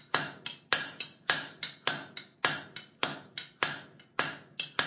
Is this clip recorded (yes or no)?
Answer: yes